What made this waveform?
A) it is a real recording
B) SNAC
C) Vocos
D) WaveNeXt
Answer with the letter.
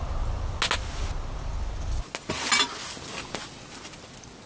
A